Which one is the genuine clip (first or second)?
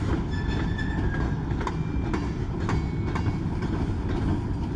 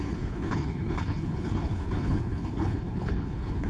first